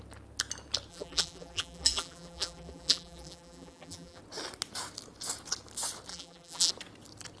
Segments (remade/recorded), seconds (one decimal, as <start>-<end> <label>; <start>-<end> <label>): 0.0-0.9 recorded; 0.9-4.2 remade; 4.2-6.1 recorded; 6.1-6.7 remade; 6.7-7.4 recorded

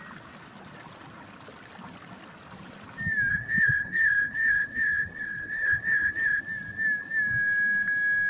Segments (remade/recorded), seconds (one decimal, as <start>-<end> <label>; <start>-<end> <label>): 0.0-3.3 recorded; 3.3-6.4 remade; 6.4-8.3 recorded